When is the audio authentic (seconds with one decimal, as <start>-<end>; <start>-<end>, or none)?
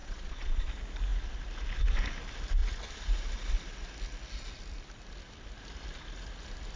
0.7-6.8